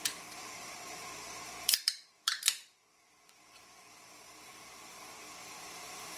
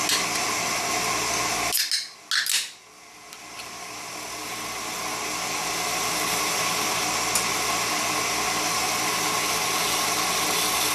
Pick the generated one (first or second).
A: first